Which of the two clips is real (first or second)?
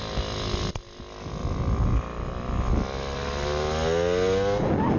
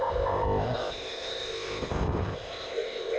first